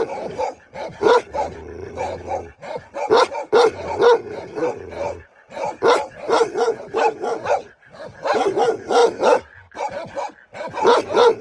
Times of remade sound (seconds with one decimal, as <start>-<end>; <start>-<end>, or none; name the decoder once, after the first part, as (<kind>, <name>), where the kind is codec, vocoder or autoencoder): 0.9-2.0 (vocoder, BigVGAN v2); 9.0-9.9